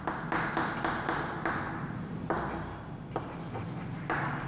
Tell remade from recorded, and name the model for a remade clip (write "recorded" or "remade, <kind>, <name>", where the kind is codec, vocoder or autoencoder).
recorded